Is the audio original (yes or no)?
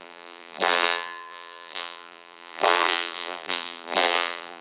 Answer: no